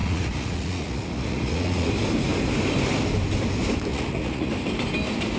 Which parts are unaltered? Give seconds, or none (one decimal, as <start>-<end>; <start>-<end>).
1.9-3.9; 4.5-5.4